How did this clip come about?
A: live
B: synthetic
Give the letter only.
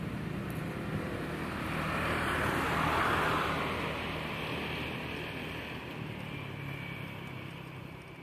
A